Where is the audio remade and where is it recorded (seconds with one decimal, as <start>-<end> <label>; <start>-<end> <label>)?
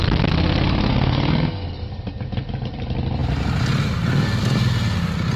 0.0-0.9 recorded; 0.9-1.9 remade; 1.9-5.4 recorded